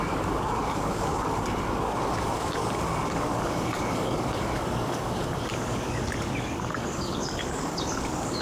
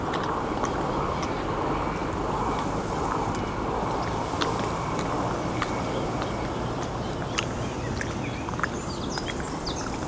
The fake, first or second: first